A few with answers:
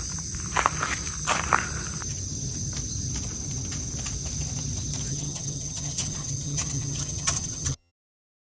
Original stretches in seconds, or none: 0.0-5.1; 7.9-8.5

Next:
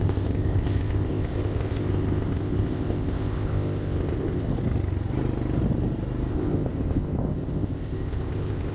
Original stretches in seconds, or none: 4.5-6.3